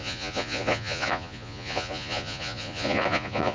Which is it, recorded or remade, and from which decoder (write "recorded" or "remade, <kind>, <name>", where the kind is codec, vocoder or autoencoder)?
remade, vocoder, Vocos